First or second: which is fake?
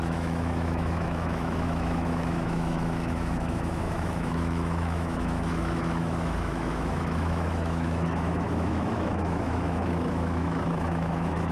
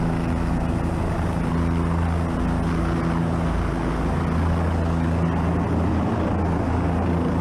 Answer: first